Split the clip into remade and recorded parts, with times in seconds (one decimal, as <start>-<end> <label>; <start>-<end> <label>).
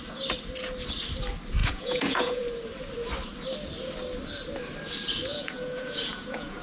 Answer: 0.0-1.6 recorded; 1.6-2.4 remade; 2.4-5.3 recorded; 5.3-6.6 remade